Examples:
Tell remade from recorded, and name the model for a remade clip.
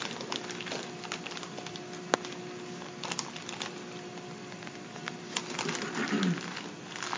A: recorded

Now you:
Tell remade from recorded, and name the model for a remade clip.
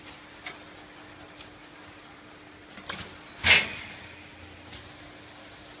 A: recorded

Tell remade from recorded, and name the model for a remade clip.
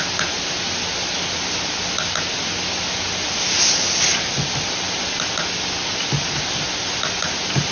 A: recorded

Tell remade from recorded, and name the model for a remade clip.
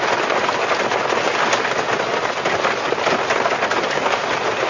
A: recorded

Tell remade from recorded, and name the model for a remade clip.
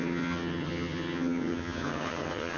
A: remade, vocoder, HiFi-GAN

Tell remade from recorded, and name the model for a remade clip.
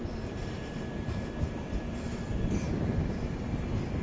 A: recorded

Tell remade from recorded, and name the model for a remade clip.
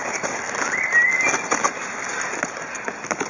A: recorded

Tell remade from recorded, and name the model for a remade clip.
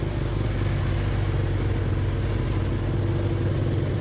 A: recorded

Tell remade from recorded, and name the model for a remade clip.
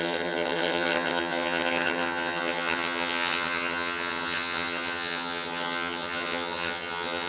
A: remade, vocoder, HiFi-GAN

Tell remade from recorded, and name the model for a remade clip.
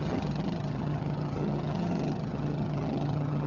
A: remade, vocoder, HiFi-GAN